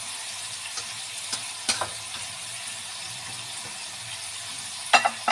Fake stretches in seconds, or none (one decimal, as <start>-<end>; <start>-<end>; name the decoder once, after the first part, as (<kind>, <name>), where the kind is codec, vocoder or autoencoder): 3.0-4.3 (vocoder, BigVGAN v2)